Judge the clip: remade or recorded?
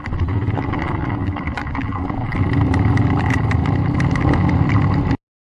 recorded